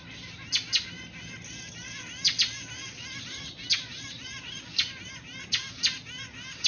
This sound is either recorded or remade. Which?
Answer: recorded